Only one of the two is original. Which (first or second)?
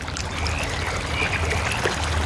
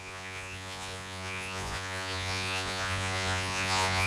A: first